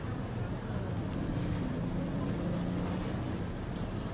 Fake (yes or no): no